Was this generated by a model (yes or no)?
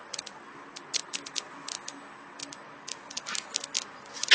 no